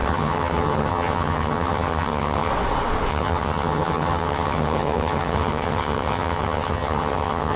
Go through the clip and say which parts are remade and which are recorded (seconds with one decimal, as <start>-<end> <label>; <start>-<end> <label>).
0.0-2.5 remade; 2.5-3.1 recorded; 3.1-7.6 remade